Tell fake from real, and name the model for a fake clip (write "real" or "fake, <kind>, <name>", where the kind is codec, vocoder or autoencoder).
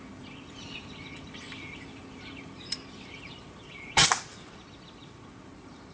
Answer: fake, vocoder, BigVGAN v2